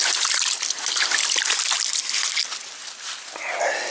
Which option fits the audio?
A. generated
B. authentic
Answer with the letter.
B